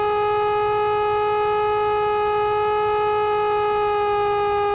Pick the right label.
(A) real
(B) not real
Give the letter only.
A